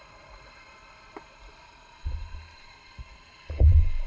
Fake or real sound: fake